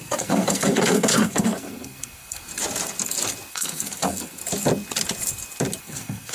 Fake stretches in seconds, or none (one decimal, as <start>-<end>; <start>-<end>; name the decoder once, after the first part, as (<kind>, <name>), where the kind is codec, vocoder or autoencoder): 0.0-2.5 (codec, SNAC); 3.5-4.4; 5.8-6.3